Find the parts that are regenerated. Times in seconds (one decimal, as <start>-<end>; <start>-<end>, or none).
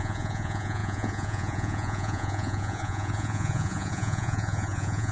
0.0-5.1